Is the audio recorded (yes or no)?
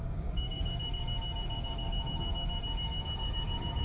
no